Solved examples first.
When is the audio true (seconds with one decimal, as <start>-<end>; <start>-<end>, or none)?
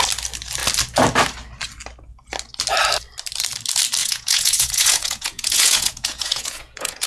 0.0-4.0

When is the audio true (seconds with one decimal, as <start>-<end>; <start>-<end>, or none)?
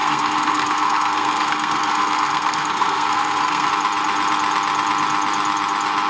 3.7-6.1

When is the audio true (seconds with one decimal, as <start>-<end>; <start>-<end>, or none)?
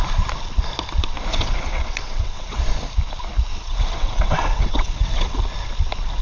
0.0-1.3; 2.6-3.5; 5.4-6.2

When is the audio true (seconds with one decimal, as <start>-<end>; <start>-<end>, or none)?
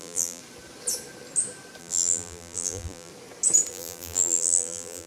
0.4-1.8; 3.1-3.7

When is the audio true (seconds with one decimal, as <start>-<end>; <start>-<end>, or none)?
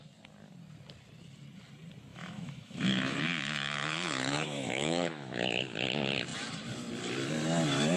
0.0-2.1; 5.6-8.0